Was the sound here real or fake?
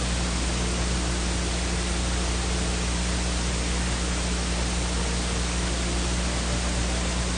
fake